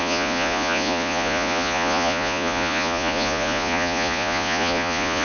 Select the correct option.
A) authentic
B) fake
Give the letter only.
B